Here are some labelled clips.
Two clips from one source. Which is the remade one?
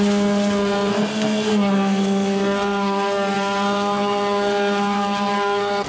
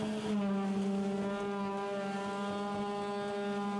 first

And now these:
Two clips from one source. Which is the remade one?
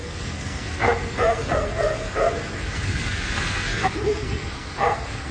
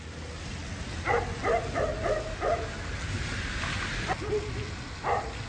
first